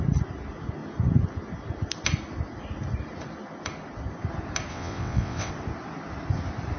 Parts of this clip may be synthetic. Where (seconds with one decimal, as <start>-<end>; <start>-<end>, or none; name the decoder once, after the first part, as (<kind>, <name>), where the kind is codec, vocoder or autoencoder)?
4.7-5.5 (vocoder, WaveNeXt)